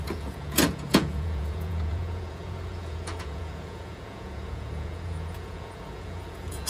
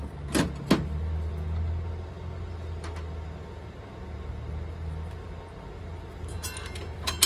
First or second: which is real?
second